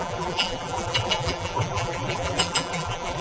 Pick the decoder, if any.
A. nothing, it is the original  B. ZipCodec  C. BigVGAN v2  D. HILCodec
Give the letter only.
C